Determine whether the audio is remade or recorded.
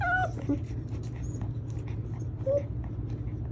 recorded